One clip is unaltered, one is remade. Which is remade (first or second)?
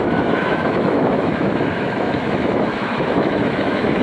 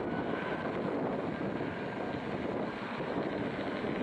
first